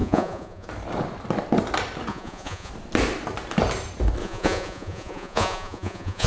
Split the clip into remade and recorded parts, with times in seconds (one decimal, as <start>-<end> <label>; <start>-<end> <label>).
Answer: 0.0-0.7 remade; 0.7-2.1 recorded; 2.1-2.7 remade; 2.7-4.2 recorded; 4.2-6.3 remade